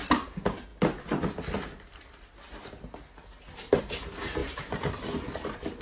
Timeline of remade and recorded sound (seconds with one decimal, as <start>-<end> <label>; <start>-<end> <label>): 0.0-4.4 recorded; 4.4-5.3 remade; 5.3-5.8 recorded